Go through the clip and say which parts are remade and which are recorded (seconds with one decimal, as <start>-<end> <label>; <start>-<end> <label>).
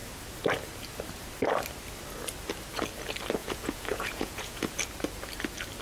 0.0-3.4 recorded; 3.4-4.8 remade; 4.8-5.8 recorded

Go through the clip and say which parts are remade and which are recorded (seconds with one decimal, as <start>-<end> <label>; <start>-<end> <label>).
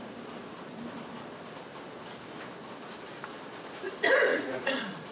0.0-4.3 recorded; 4.3-5.1 remade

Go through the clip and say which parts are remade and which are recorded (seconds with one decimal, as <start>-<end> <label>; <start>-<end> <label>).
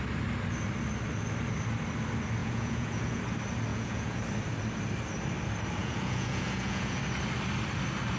0.0-2.4 recorded; 2.4-3.2 remade; 3.2-3.7 recorded; 3.7-4.2 remade; 4.2-5.8 recorded; 5.8-7.0 remade; 7.0-8.2 recorded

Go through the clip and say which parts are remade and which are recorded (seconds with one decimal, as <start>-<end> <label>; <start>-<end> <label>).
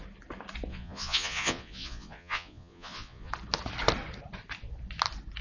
0.0-0.7 recorded; 0.7-3.3 remade; 3.3-5.4 recorded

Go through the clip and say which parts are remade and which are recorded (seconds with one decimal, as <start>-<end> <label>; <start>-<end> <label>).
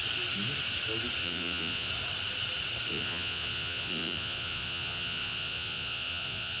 0.0-1.2 recorded; 1.2-1.9 remade; 1.9-2.9 recorded; 2.9-6.6 remade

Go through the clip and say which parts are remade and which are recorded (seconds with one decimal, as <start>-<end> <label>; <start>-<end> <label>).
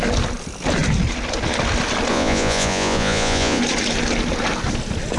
0.0-2.1 recorded; 2.1-3.6 remade; 3.6-5.2 recorded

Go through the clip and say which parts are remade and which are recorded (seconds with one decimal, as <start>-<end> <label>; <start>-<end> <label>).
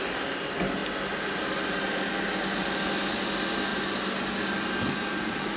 0.0-5.6 recorded